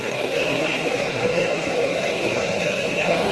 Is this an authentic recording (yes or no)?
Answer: no